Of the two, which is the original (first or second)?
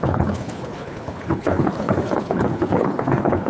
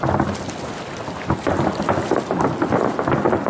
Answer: second